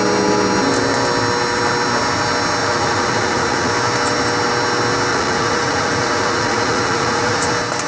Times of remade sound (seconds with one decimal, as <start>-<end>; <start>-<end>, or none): 2.6-3.7; 5.1-7.5